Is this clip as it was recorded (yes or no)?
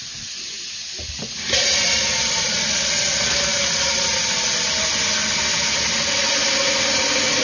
yes